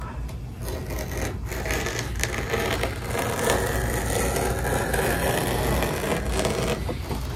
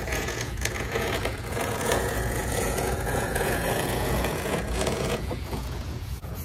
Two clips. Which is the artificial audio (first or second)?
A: second